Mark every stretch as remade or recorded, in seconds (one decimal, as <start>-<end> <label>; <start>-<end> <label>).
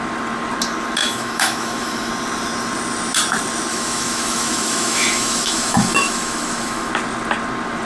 0.0-1.0 recorded; 1.0-2.1 remade; 2.1-3.7 recorded; 3.7-6.9 remade; 6.9-7.8 recorded